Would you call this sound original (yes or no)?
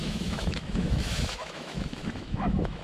no